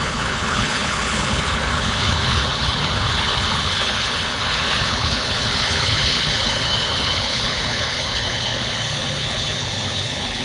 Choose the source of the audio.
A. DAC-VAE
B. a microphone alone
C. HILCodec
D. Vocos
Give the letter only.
C